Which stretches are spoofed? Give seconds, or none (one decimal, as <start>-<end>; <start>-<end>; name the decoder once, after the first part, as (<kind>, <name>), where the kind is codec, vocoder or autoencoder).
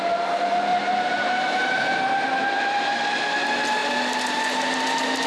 0.7-2.8 (vocoder, BigVGAN v2)